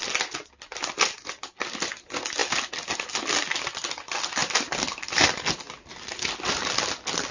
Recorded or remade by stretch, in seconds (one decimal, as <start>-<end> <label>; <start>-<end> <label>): 0.0-7.3 recorded